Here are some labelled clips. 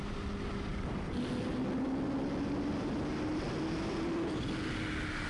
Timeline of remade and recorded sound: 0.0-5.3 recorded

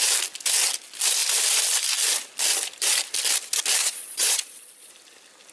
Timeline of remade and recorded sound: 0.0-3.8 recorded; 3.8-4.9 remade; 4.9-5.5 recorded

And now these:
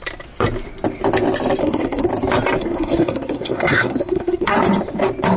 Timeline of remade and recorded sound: 0.0-1.6 recorded; 1.6-2.1 remade; 2.1-2.6 recorded; 2.6-4.6 remade; 4.6-5.4 recorded